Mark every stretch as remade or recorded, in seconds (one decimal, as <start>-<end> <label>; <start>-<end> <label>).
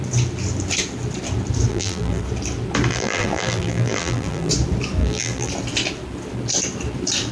0.0-1.7 recorded; 1.7-2.2 remade; 2.2-2.9 recorded; 2.9-4.5 remade; 4.5-5.0 recorded; 5.0-5.5 remade; 5.5-7.3 recorded